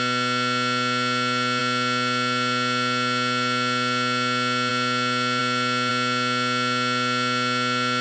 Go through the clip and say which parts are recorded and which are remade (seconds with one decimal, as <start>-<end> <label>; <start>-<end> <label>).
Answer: 0.0-8.0 recorded